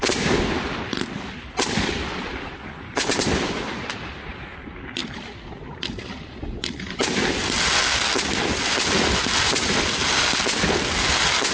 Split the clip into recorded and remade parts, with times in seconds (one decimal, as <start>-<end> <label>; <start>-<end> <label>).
0.0-11.5 recorded